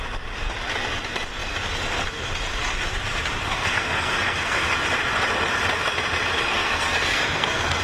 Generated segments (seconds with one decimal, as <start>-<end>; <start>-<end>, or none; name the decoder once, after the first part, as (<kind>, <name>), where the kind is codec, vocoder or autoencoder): 3.5-4.6 (codec, SNAC); 6.5-7.8